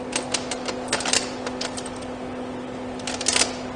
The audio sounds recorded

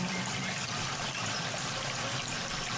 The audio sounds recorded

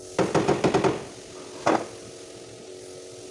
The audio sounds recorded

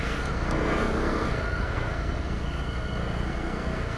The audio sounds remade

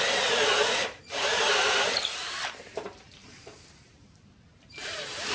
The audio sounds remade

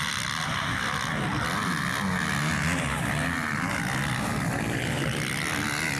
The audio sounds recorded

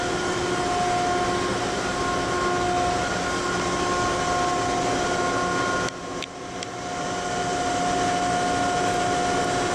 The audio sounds recorded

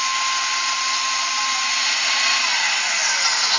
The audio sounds recorded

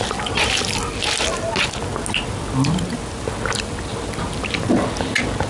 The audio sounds recorded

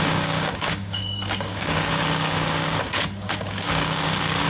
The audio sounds remade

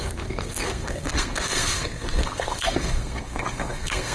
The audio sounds remade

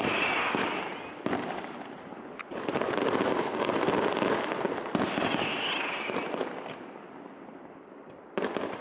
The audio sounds recorded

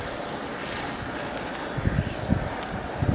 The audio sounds recorded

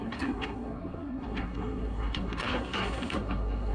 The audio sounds remade